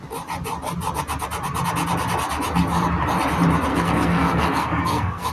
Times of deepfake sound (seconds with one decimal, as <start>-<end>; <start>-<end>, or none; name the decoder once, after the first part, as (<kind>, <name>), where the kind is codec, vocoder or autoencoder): 3.7-5.3 (codec, SNAC)